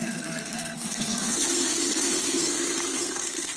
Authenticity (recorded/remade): remade